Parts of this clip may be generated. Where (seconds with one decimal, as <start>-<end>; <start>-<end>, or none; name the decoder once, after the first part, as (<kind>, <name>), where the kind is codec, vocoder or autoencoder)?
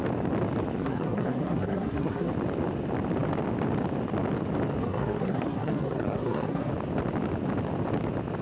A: 0.8-2.3 (codec, SNAC); 4.8-6.7